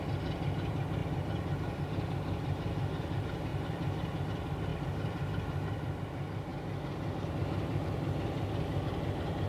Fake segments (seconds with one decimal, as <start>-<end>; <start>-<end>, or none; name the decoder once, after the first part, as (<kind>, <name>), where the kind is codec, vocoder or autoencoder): none